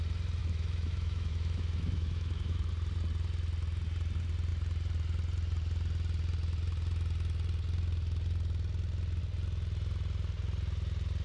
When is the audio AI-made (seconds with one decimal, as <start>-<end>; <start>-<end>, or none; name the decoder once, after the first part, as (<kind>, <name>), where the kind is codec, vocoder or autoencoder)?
0.4-2.7 (autoencoder, DAC-VAE)